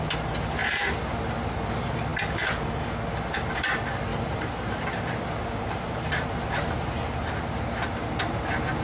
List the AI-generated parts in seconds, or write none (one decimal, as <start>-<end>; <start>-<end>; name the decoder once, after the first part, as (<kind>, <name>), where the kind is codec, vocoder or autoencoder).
0.6-1.5 (vocoder, BigVGAN v2); 4.1-7.0